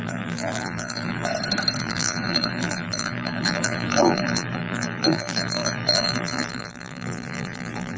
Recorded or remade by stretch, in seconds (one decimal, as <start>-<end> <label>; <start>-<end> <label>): 0.0-1.3 remade; 1.3-1.8 recorded; 1.8-8.0 remade